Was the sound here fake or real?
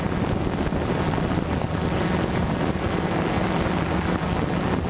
real